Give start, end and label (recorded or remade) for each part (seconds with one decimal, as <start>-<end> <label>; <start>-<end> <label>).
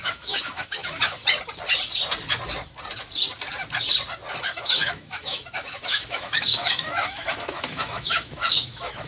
0.0-1.2 remade; 1.2-4.4 recorded; 4.4-9.1 remade